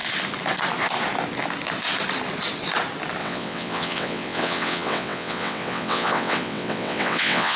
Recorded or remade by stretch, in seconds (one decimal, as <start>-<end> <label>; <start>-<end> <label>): 0.0-3.2 recorded; 3.2-7.6 remade